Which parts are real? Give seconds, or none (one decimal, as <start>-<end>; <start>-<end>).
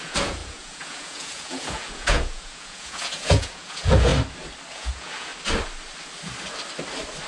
4.1-4.7; 5.3-7.3